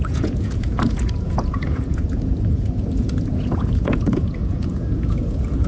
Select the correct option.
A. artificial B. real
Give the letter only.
A